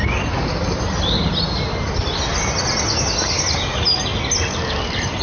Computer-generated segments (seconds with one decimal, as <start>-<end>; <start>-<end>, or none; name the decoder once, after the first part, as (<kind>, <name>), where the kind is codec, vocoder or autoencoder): none